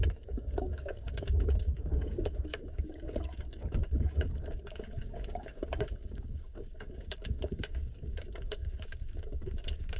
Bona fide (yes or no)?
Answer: no